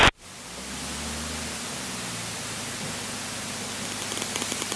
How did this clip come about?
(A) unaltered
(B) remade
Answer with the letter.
A